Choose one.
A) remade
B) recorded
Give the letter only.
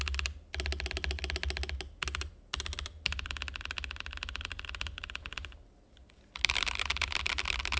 B